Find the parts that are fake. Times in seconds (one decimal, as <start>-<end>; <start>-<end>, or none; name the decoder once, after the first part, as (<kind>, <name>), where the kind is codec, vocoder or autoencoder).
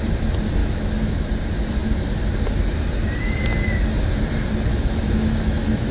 0.6-1.2 (autoencoder, DAC-VAE); 4.7-5.9